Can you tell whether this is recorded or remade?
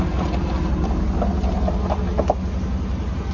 recorded